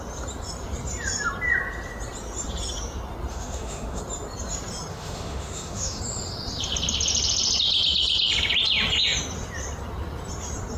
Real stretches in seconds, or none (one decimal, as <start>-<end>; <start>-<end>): 0.0-3.3; 4.0-4.9; 6.0-10.8